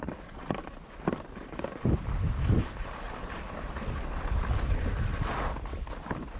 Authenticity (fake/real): real